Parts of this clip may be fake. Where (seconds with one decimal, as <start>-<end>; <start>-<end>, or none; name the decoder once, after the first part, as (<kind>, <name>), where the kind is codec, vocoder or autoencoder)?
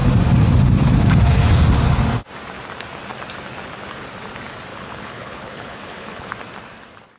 4.7-6.3 (codec, HILCodec)